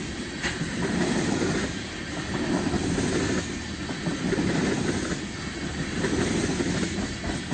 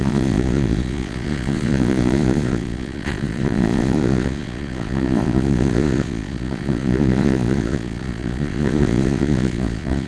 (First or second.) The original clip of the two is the first